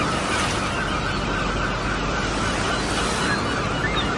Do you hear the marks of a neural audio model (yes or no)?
no